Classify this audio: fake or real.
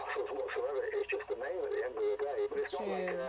real